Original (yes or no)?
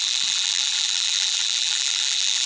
no